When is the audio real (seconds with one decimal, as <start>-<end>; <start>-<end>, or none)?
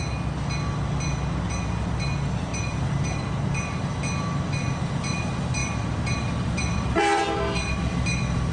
0.0-2.5; 3.8-5.6; 7.2-8.5